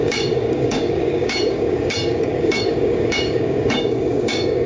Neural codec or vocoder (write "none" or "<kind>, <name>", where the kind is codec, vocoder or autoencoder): codec, DAC